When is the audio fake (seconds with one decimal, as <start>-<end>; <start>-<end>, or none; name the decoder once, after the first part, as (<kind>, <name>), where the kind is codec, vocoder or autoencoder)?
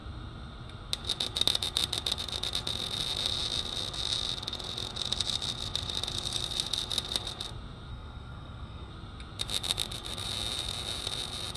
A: 7.9-8.9 (codec, SNAC)